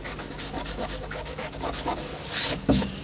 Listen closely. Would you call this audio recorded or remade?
remade